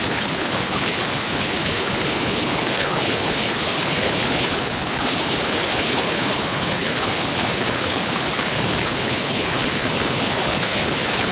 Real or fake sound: fake